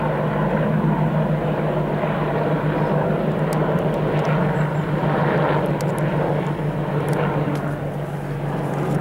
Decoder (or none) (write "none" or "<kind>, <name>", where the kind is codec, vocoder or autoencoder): none